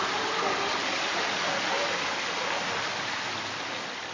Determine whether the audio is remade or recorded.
recorded